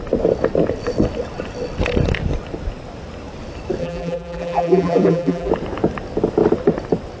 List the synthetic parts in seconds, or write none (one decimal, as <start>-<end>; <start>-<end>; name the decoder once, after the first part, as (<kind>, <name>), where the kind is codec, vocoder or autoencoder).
3.8-5.5 (vocoder, BigVGAN v2)